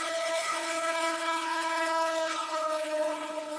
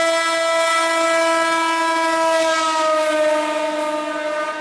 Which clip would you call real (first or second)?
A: second